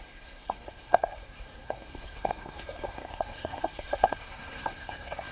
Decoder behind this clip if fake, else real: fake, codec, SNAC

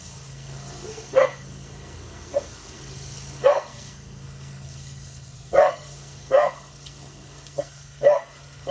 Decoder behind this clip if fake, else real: fake, codec, SNAC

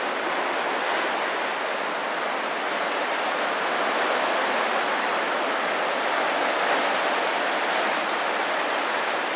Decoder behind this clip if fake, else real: real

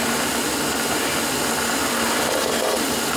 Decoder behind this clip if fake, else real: real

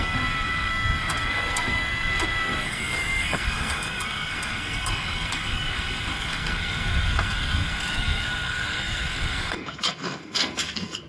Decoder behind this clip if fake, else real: fake, codec, SNAC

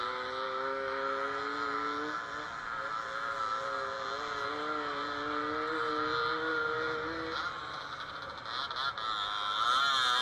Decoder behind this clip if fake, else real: real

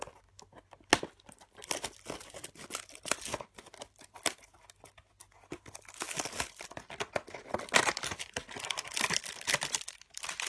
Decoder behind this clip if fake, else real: real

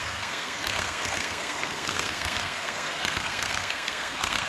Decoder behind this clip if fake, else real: fake, codec, SNAC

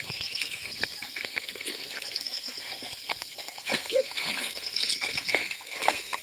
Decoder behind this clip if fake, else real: fake, codec, SNAC